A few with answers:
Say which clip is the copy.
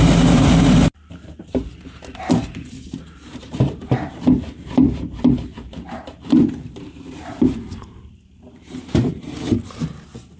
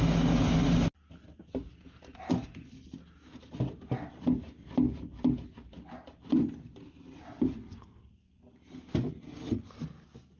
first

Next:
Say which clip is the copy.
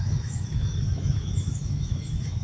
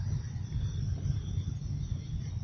first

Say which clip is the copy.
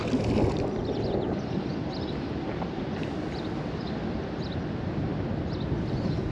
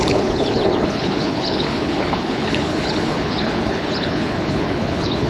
second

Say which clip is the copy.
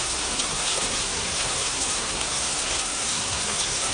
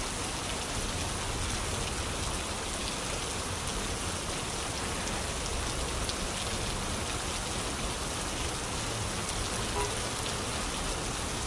first